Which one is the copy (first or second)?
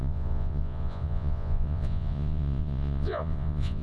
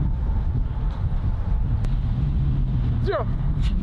first